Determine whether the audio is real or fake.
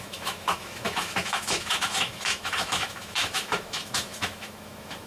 fake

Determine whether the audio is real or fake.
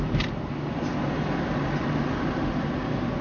real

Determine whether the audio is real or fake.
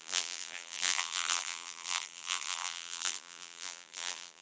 fake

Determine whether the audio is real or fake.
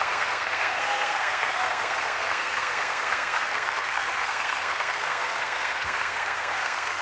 fake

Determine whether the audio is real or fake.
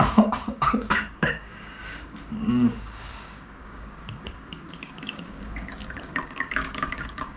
fake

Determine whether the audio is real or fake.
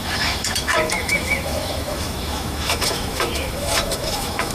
fake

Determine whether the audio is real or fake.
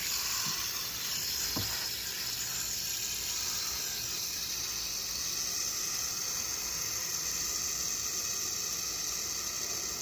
real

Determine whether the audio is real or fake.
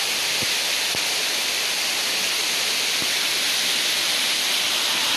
real